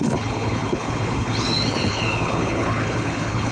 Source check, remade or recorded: remade